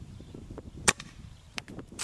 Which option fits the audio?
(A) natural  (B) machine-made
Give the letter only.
B